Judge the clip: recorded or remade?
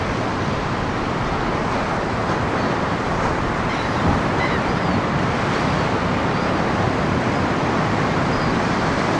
remade